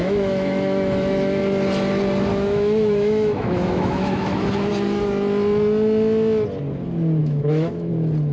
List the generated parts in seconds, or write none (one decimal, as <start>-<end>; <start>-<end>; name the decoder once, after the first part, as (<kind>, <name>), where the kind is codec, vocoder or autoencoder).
0.0-1.4 (autoencoder, DAC-VAE); 2.3-4.7; 7.2-7.9